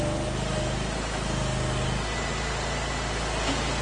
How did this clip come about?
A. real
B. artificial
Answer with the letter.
A